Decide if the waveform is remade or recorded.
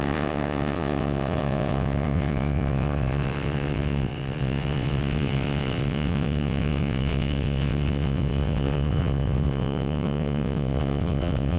remade